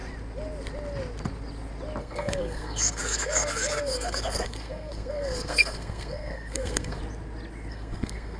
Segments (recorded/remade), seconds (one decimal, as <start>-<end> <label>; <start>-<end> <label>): 0.0-2.0 recorded; 2.0-7.0 remade; 7.0-7.7 recorded; 7.7-8.4 remade